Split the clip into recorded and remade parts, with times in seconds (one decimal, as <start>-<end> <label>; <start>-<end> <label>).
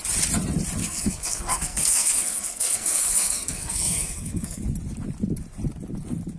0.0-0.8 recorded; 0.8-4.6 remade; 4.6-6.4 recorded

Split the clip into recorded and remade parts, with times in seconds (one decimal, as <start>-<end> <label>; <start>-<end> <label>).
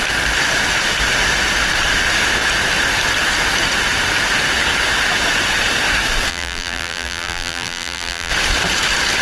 0.0-6.3 recorded; 6.3-8.3 remade; 8.3-9.2 recorded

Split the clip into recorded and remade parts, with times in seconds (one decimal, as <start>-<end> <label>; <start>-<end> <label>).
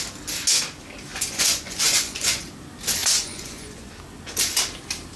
0.0-1.1 recorded; 1.1-2.4 remade; 2.4-3.0 recorded; 3.0-3.9 remade; 3.9-5.2 recorded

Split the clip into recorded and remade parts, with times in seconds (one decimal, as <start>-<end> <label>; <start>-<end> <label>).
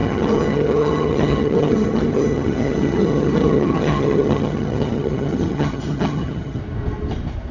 0.0-6.6 remade; 6.6-7.5 recorded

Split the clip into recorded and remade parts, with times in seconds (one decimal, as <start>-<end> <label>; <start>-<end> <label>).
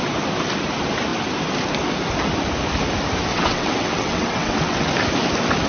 0.0-3.3 recorded; 3.3-4.9 remade; 4.9-5.7 recorded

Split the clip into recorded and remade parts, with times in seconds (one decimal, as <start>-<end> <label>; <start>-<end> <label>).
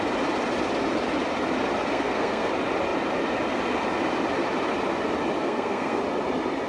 0.0-1.9 recorded; 1.9-2.5 remade; 2.5-5.4 recorded; 5.4-6.0 remade; 6.0-6.7 recorded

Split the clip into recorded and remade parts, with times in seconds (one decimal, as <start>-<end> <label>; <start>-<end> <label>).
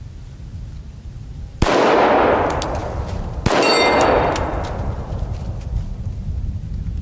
0.0-7.0 recorded